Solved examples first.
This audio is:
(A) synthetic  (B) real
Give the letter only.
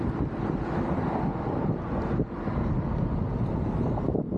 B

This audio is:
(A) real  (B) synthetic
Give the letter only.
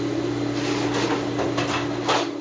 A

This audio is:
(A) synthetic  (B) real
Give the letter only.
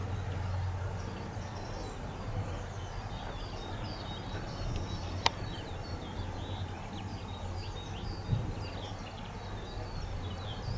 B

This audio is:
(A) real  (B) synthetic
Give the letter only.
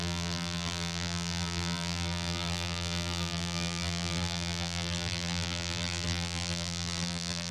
B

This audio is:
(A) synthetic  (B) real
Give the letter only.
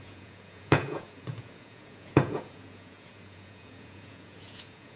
A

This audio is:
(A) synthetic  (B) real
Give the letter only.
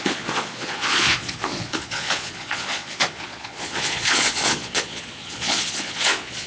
A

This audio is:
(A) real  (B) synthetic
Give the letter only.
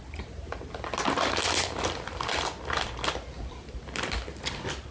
A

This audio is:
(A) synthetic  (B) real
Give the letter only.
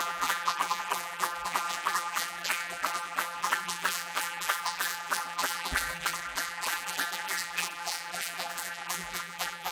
A